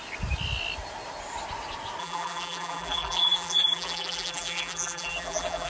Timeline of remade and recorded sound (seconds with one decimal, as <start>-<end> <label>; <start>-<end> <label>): 0.0-2.0 recorded; 2.0-5.7 remade